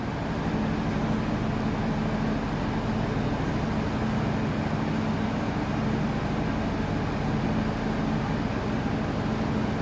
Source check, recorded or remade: recorded